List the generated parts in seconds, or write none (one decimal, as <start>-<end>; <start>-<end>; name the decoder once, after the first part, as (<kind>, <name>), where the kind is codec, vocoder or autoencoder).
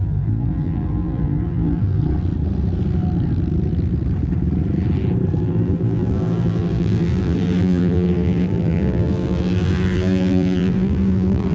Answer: 0.0-2.0 (vocoder, BigVGAN v2); 5.4-11.5